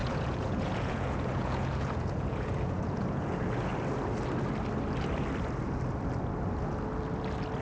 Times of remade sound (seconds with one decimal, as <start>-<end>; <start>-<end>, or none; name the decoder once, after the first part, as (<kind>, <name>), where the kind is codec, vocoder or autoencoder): 0.0-3.7 (vocoder, Vocos)

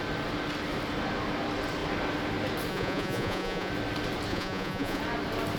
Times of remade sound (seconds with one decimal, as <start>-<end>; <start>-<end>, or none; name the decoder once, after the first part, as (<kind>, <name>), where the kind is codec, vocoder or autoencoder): 2.7-3.7 (vocoder, Vocos); 4.3-5.0

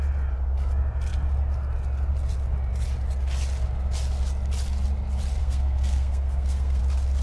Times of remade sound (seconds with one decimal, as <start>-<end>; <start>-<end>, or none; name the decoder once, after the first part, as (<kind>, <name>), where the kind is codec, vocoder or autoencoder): 5.4-6.8 (codec, SNAC)

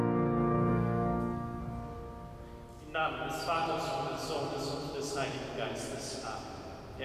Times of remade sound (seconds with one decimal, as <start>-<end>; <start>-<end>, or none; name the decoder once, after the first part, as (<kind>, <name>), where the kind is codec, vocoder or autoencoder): 0.7-1.6 (codec, SNAC)

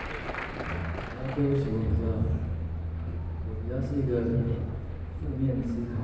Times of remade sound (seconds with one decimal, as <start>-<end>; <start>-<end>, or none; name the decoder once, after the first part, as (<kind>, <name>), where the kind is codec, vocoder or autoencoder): none